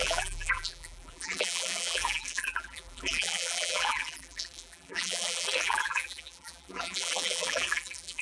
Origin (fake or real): fake